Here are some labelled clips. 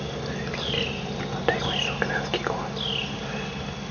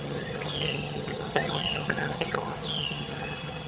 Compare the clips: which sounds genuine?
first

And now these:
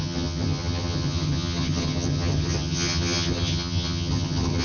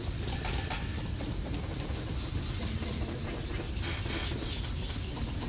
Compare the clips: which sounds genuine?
second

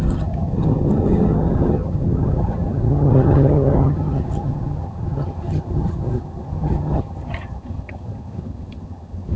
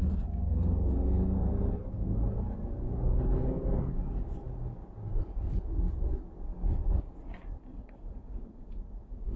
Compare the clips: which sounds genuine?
second